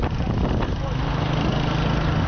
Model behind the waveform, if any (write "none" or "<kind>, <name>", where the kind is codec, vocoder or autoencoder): none